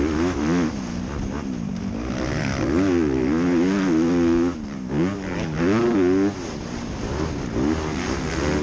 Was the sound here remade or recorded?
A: recorded